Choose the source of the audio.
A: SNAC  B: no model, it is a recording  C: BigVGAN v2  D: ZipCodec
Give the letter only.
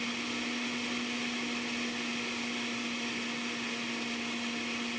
B